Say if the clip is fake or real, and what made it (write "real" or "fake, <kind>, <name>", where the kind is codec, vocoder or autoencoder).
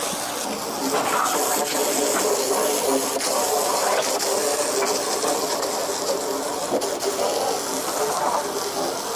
real